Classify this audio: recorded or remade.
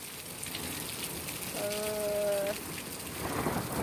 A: recorded